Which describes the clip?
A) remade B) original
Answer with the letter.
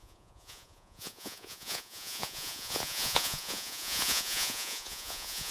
A